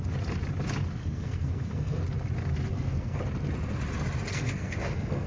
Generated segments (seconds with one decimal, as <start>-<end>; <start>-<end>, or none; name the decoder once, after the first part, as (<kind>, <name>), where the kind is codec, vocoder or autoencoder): 1.0-2.0 (codec, SNAC); 2.7-3.2; 4.3-5.3